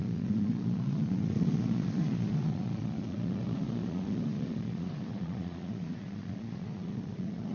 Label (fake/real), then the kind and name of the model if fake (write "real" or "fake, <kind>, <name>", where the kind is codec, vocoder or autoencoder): fake, vocoder, Vocos